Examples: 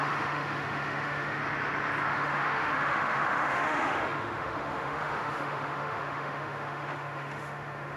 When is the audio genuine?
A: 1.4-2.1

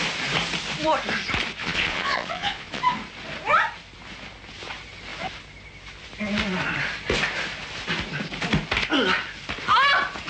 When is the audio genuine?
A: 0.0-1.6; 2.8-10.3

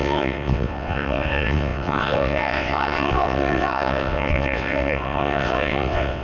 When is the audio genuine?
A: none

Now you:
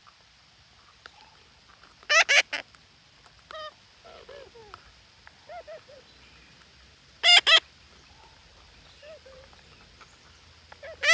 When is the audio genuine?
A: 0.0-11.1

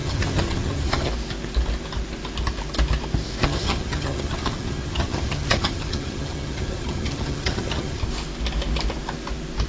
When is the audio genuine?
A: 1.1-3.4; 8.0-9.7